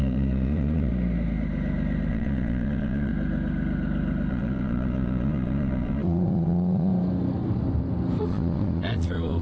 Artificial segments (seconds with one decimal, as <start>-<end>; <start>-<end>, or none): 0.0-0.9; 2.1-3.1; 4.3-6.9; 8.2-9.4